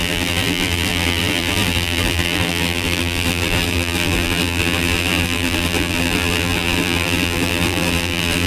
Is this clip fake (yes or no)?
yes